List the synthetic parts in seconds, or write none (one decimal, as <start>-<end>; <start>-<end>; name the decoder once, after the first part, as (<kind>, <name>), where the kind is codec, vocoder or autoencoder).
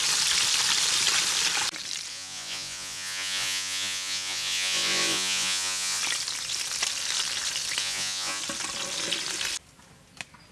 2.1-6.0 (vocoder, Vocos); 7.8-8.4